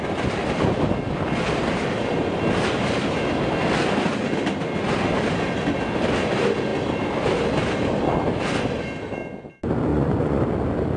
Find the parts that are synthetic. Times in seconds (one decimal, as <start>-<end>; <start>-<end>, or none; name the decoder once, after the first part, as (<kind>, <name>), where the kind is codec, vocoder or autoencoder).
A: 9.9-10.4 (vocoder, Vocos)